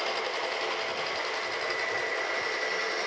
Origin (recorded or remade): recorded